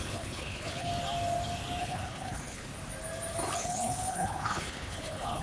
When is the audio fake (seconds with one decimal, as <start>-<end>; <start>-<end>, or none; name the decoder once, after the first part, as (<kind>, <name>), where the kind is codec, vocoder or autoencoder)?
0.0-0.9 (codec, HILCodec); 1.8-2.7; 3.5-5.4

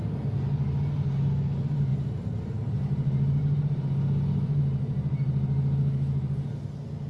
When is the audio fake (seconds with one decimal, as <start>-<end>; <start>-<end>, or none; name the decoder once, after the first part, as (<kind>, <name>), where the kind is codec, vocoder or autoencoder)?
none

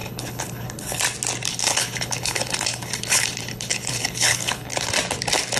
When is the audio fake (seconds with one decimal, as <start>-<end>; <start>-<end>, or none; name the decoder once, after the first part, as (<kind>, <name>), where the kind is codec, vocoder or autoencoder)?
0.0-1.0 (codec, HILCodec); 1.5-4.9

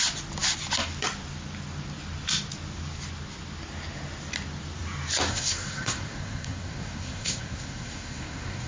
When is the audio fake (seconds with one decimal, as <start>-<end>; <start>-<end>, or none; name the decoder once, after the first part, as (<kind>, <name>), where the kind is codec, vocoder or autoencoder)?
5.3-8.7 (codec, SNAC)

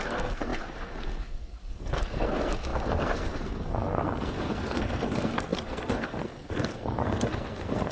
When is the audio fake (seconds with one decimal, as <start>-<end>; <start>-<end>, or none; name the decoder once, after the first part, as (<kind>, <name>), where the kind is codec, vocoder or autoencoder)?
0.0-7.9 (codec, SNAC)

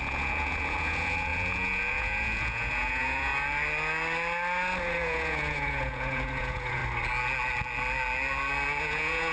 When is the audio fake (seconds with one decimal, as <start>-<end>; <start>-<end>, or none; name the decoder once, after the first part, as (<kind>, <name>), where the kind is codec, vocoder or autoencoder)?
0.0-3.3 (vocoder, Vocos); 4.8-6.8; 8.8-9.3

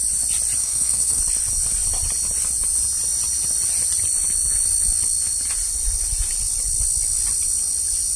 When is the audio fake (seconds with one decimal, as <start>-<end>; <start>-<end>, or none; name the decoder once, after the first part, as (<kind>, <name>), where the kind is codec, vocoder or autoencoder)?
0.6-1.2 (codec, SNAC)